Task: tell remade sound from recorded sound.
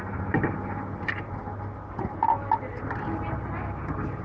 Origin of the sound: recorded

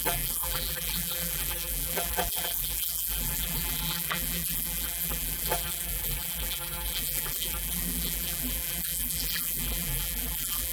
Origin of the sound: remade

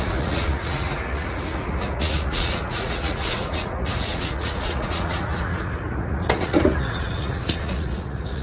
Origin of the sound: remade